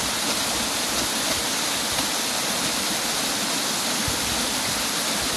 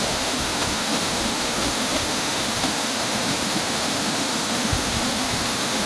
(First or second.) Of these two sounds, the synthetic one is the second